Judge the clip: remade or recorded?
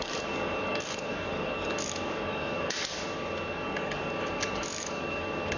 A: remade